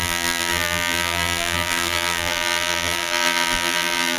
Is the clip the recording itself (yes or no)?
no